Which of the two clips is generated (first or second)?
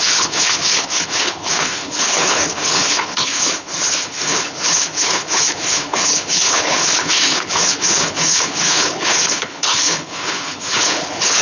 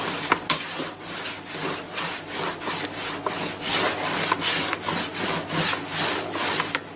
first